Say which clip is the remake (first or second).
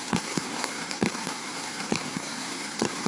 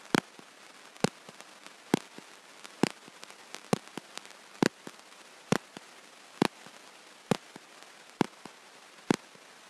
first